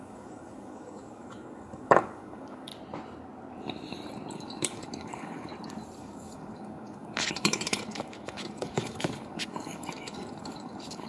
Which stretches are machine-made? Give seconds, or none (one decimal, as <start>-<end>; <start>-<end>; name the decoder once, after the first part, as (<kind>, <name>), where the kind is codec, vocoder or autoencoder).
0.0-2.7 (codec, DAC); 4.3-5.5; 6.0-11.1